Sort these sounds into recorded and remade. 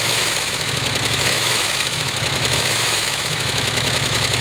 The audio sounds remade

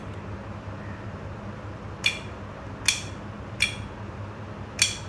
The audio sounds recorded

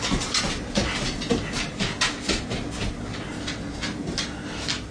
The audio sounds recorded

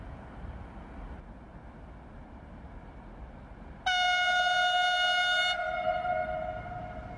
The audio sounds recorded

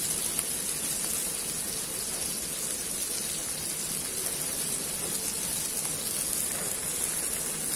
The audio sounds recorded